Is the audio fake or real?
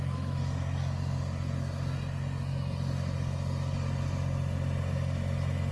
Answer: real